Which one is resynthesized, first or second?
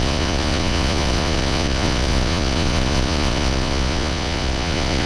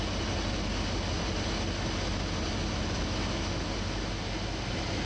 first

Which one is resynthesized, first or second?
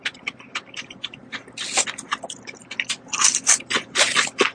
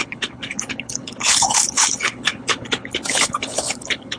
second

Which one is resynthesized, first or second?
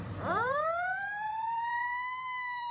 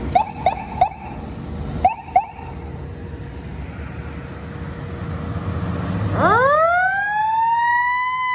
first